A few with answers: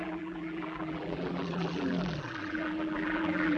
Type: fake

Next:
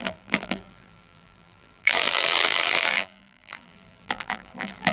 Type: fake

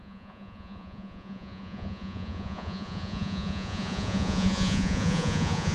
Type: fake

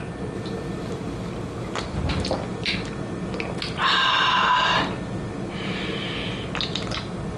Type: real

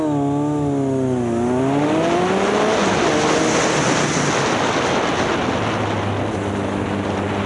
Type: real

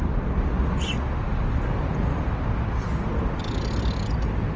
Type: real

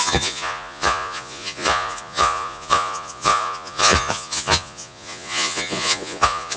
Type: fake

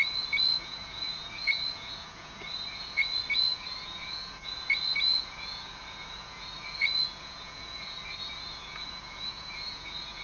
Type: fake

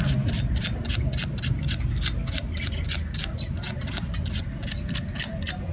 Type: real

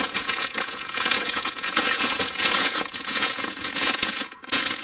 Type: fake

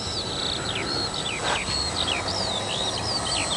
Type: real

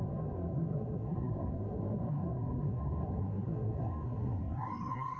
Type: fake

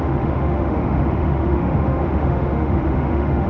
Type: fake